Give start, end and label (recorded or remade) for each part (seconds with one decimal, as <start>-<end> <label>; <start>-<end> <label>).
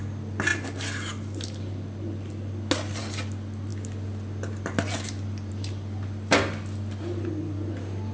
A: 0.0-8.1 recorded